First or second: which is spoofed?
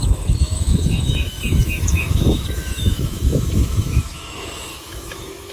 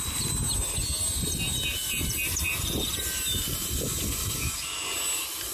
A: first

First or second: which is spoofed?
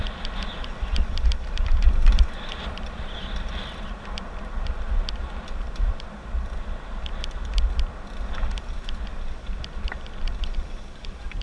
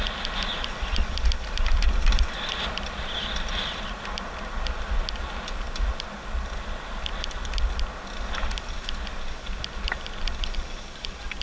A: first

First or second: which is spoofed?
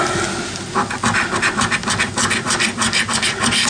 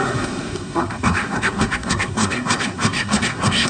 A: second